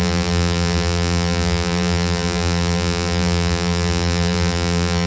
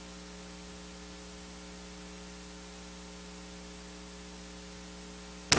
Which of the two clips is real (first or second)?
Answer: second